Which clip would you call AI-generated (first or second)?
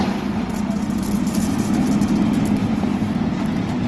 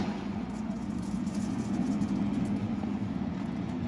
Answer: second